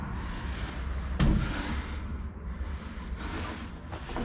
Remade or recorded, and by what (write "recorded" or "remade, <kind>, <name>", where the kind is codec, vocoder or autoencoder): recorded